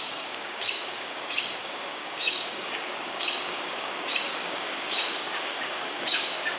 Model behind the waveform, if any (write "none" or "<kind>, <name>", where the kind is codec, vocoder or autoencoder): codec, DAC